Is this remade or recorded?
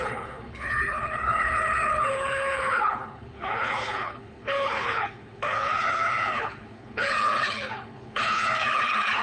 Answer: remade